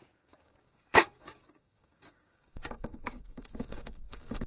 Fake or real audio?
fake